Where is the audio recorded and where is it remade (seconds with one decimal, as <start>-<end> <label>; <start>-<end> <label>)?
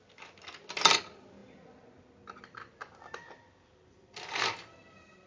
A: 0.0-5.3 recorded